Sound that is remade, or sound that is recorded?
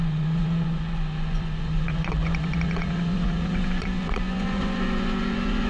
remade